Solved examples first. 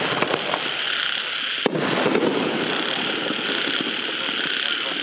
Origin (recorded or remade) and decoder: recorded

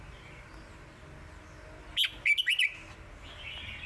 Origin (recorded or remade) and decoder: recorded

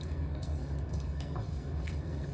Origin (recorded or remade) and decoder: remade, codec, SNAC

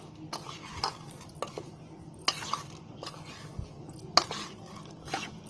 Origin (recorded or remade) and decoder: recorded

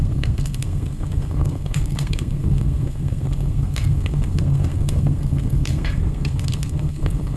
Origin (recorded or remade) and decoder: remade, codec, SNAC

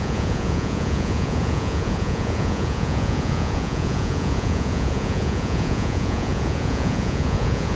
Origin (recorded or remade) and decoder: remade, vocoder, Vocos